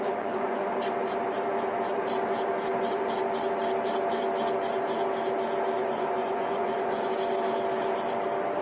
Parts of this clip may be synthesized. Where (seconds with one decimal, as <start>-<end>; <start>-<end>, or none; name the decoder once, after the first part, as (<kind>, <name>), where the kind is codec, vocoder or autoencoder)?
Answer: 0.0-0.6 (vocoder, Vocos); 5.8-7.1